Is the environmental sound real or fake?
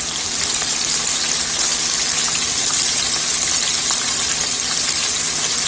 real